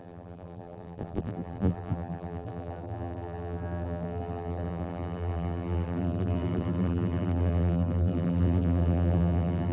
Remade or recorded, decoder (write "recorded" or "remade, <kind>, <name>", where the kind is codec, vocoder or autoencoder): remade, vocoder, BigVGAN v2